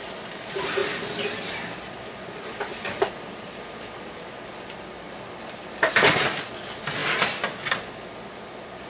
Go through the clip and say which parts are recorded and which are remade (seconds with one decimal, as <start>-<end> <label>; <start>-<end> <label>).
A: 0.0-8.9 recorded